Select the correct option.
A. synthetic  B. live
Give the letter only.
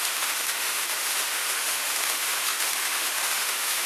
A